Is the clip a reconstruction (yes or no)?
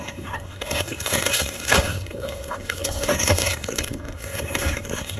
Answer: yes